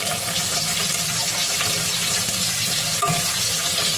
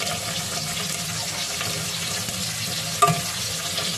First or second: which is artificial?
first